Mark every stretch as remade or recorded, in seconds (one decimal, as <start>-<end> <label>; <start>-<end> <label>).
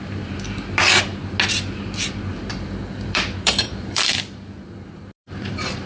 0.0-1.1 remade; 1.1-2.0 recorded; 2.0-5.9 remade